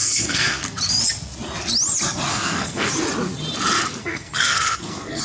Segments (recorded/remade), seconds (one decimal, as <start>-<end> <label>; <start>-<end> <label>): 0.0-0.8 remade; 0.8-2.3 recorded; 2.3-2.9 remade; 2.9-4.0 recorded; 4.0-5.2 remade